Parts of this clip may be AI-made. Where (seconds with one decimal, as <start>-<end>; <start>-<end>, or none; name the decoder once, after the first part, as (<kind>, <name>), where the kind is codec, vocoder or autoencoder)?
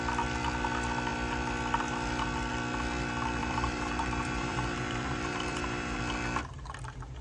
3.4-6.0 (vocoder, BigVGAN v2)